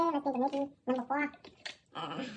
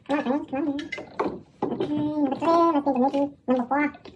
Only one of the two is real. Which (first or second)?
second